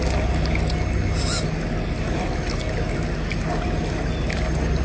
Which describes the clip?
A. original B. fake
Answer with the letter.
A